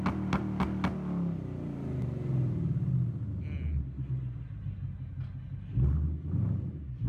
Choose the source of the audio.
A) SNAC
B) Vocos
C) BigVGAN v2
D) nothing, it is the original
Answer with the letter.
D